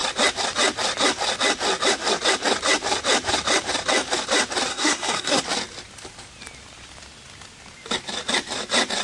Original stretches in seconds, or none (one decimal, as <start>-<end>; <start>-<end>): 0.0-4.7; 5.4-9.0